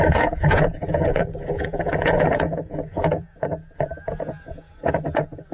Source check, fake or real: fake